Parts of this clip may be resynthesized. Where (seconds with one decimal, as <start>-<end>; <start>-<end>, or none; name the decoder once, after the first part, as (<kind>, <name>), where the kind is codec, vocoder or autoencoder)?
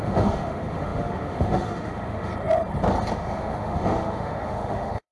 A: 0.0-2.3 (autoencoder, DAC-VAE); 3.1-5.1